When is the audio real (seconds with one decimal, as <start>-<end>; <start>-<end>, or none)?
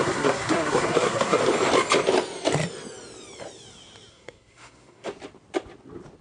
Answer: 1.4-4.1; 5.1-6.2